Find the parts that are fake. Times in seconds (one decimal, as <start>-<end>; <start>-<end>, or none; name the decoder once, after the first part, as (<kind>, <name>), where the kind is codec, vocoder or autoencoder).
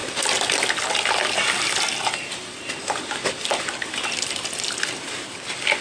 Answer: none